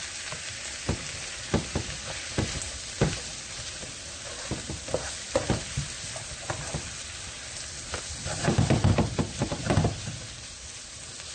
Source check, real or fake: real